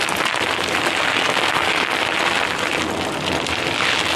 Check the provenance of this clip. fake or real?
real